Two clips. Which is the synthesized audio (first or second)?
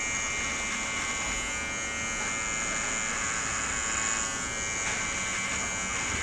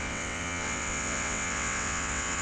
second